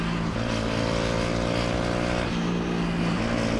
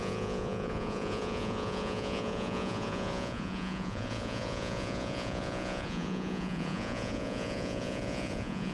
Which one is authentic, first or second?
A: first